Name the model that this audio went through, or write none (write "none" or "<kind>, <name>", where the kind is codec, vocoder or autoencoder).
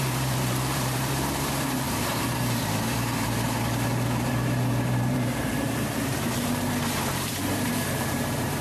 vocoder, BigVGAN v2